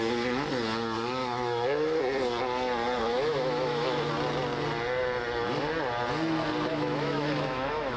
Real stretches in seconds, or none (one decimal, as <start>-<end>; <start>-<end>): 0.0-1.2; 2.0-3.0; 4.1-6.7

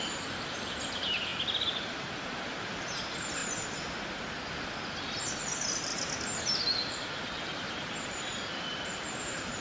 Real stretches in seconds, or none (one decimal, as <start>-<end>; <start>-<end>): 3.4-4.9; 5.9-6.6

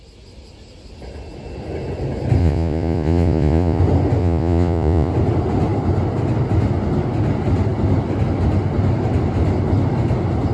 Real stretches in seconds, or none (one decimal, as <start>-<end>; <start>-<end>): 0.0-2.4; 3.8-4.2; 5.1-10.5

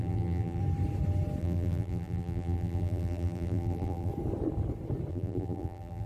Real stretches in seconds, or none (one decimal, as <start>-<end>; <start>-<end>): 0.6-1.4; 4.1-5.1

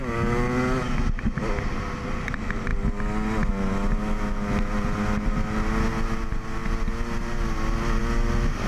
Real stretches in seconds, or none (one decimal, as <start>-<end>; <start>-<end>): 0.0-8.7

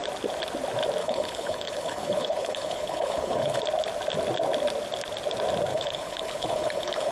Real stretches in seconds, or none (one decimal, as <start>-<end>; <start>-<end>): 0.0-1.0; 3.6-5.7

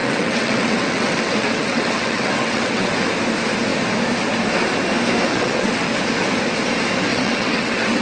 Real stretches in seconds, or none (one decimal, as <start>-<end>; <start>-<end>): 2.9-5.3; 6.0-7.1